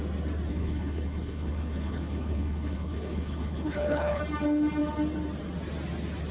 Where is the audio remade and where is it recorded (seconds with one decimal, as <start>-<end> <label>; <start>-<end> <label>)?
0.0-0.5 recorded; 0.5-4.2 remade; 4.2-6.3 recorded